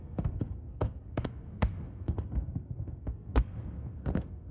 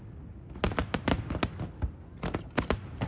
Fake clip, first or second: first